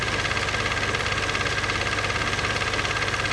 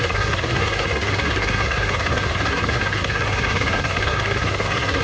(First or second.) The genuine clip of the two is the first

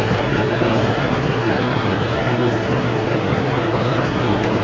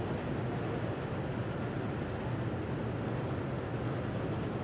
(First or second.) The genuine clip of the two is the second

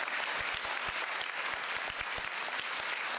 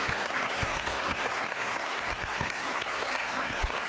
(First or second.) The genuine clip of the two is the first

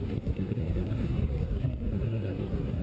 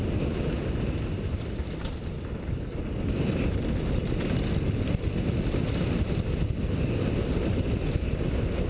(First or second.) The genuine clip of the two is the second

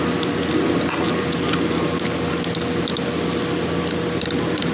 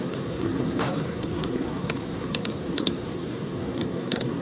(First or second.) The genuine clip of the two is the first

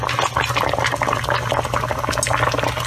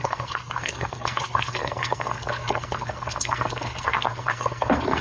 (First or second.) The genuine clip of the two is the first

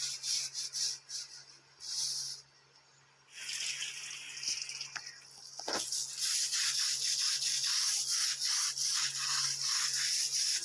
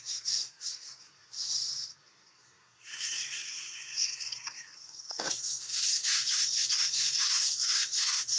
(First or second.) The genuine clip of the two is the first